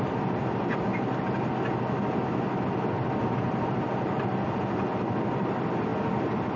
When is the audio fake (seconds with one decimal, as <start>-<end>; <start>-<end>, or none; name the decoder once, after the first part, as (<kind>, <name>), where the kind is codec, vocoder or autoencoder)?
0.0-0.9 (vocoder, BigVGAN v2); 4.9-5.9